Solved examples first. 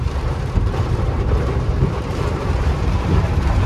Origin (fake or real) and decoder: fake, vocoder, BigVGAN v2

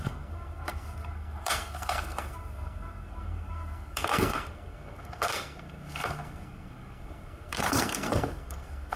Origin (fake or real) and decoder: fake, codec, SNAC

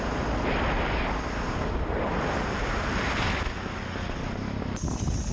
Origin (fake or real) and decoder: real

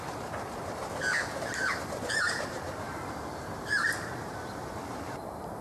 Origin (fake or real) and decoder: fake, vocoder, BigVGAN v2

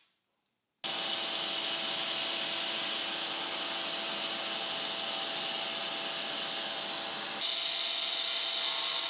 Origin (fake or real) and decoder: real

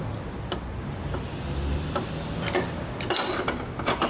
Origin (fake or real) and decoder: fake, vocoder, BigVGAN v2